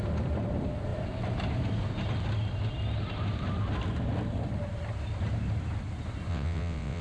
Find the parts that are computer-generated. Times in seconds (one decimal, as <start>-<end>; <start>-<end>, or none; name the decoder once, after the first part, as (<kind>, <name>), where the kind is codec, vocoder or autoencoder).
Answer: 6.3-7.0 (vocoder, WaveNeXt)